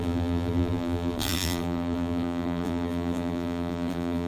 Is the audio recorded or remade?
remade